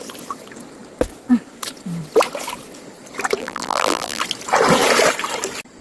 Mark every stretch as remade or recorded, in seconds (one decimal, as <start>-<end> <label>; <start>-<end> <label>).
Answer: 0.0-3.4 recorded; 3.4-4.2 remade; 4.2-5.8 recorded